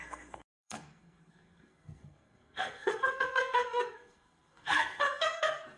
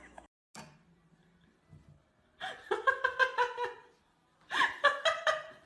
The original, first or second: second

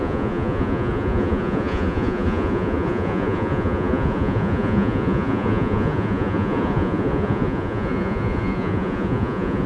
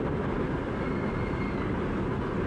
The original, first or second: second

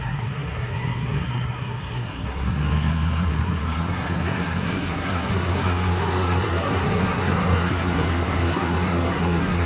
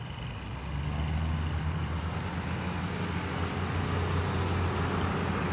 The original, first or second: second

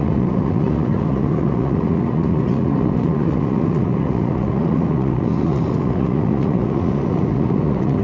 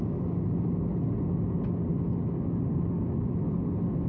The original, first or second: second